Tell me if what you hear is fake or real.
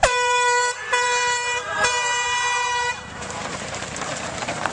fake